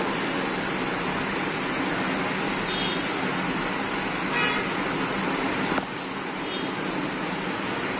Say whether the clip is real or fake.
real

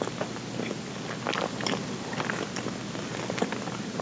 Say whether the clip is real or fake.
real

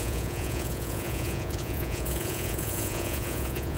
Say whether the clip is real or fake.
fake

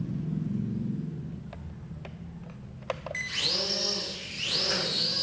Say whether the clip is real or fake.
real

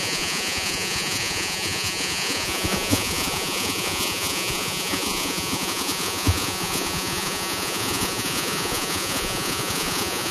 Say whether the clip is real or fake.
fake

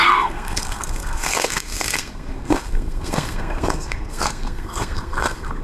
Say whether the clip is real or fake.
fake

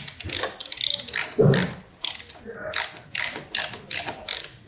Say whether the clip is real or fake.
real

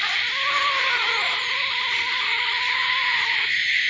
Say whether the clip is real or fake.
real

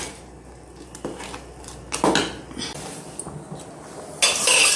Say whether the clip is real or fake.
real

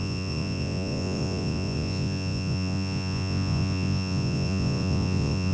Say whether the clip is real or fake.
fake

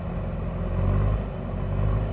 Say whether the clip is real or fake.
real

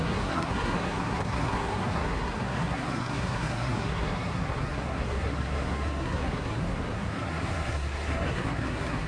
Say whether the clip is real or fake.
fake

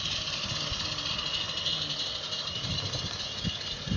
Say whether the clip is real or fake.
real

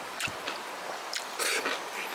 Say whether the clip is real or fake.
real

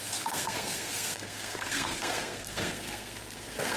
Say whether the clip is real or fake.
fake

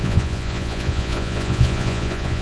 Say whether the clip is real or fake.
fake